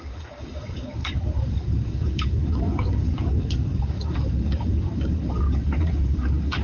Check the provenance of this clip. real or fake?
fake